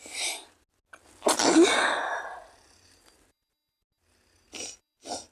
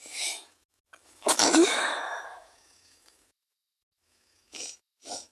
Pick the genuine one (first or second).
first